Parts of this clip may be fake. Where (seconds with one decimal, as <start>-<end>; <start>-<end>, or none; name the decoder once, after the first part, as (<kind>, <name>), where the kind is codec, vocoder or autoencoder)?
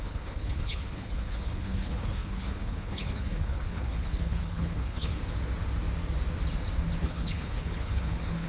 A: 0.0-5.1 (codec, HILCodec); 7.0-8.5